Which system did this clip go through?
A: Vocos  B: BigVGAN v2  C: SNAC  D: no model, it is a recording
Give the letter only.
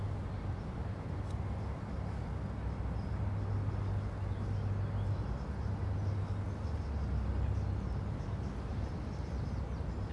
D